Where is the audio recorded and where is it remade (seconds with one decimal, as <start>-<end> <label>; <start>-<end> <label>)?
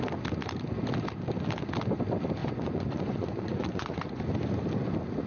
0.0-2.4 recorded; 2.4-4.2 remade; 4.2-5.3 recorded